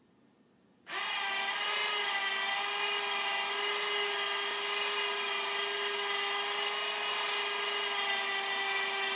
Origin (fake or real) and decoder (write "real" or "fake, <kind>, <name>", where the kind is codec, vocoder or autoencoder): real